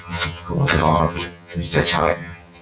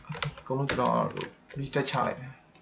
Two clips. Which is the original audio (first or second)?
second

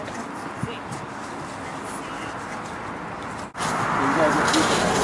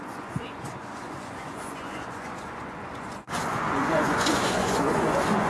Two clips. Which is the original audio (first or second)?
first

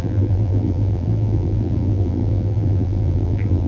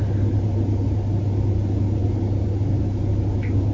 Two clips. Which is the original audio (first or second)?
second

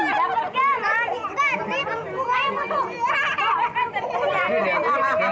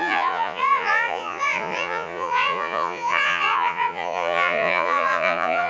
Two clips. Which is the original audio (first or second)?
first